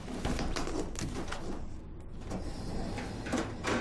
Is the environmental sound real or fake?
real